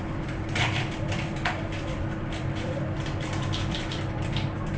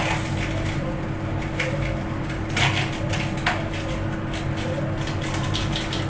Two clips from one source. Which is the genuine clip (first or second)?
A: second